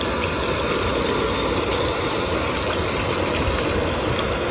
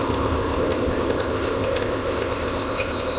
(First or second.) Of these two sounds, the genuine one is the first